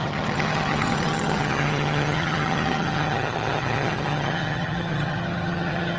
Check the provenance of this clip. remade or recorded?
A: remade